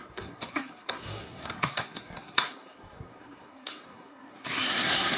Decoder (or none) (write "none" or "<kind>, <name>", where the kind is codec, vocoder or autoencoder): codec, SNAC